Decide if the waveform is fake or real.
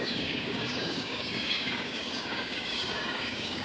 fake